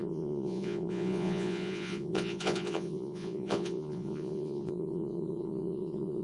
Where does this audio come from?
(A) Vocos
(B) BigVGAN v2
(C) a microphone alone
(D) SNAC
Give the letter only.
A